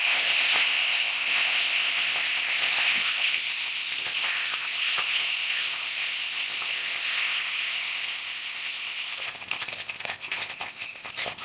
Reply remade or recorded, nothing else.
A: remade